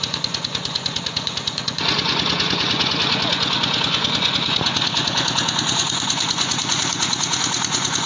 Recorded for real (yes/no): no